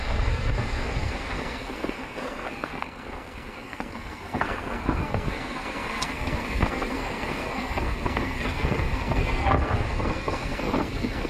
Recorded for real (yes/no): no